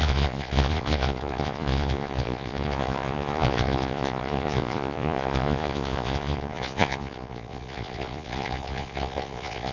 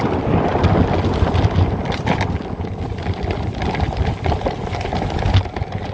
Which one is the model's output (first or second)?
first